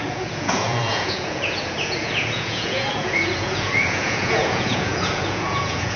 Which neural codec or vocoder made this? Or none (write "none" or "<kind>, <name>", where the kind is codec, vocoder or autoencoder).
vocoder, Vocos